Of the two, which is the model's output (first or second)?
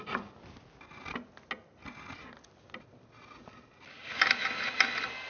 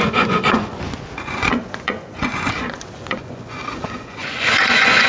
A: second